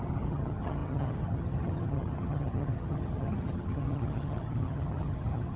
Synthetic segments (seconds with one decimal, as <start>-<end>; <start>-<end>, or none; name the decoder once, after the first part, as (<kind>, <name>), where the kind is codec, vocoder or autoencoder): 0.0-5.6 (vocoder, HiFi-GAN)